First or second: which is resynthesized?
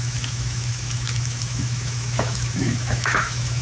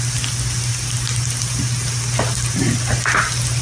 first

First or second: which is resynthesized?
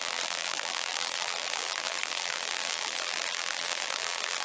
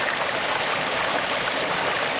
first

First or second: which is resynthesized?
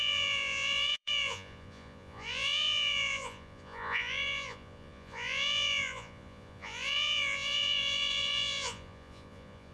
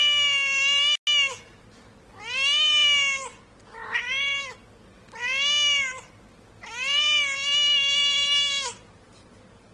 first